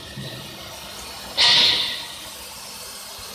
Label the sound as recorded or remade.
recorded